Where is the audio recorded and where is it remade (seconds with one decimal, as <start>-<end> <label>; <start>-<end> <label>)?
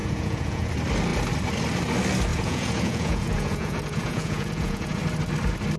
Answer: 0.0-0.7 remade; 0.7-2.3 recorded; 2.3-5.0 remade; 5.0-5.8 recorded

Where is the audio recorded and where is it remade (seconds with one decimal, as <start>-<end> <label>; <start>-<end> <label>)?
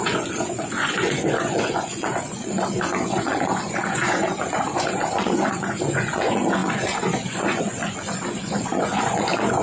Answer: 0.0-9.6 remade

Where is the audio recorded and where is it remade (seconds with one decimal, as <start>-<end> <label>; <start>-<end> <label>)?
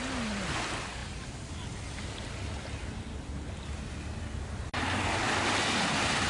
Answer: 0.0-6.3 recorded